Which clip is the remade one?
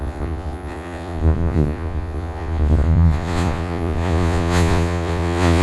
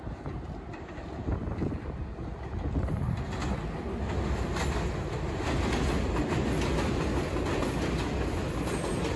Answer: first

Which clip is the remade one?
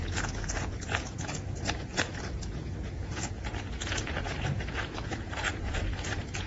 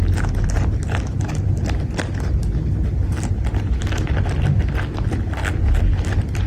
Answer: first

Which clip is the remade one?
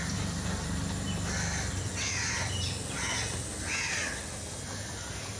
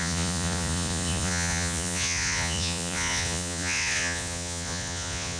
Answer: second